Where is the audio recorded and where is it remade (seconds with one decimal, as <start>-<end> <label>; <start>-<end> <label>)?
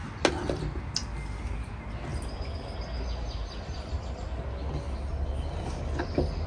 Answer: 0.0-6.5 recorded